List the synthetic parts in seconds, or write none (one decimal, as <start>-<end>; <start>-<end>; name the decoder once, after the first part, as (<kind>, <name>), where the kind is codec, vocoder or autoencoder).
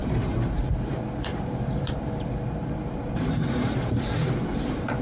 0.0-0.9 (vocoder, BigVGAN v2); 1.3-4.3